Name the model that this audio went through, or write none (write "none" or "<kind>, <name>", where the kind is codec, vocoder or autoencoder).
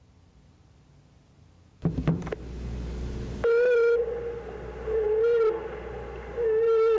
none